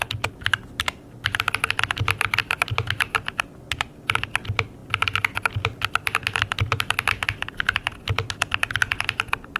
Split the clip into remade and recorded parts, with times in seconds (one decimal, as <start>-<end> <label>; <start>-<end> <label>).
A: 0.0-2.4 recorded; 2.4-3.4 remade; 3.4-9.6 recorded